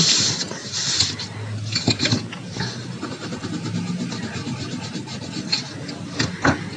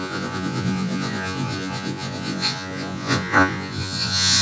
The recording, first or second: first